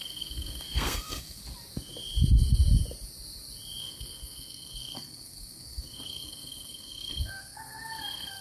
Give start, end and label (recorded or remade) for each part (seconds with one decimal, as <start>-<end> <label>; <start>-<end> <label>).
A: 0.0-1.4 remade; 1.4-3.8 recorded; 3.8-8.4 remade